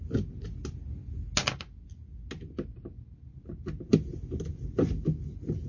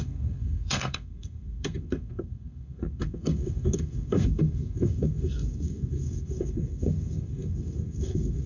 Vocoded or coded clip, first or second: second